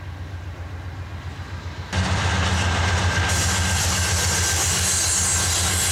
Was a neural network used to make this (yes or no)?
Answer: no